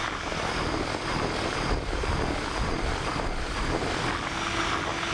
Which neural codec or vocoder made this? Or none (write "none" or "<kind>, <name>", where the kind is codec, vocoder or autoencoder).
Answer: none